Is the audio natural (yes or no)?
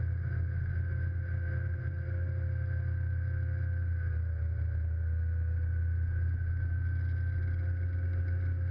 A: yes